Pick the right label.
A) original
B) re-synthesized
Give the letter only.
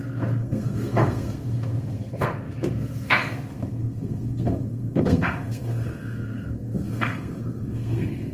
B